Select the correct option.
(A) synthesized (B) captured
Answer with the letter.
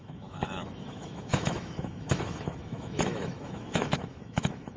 A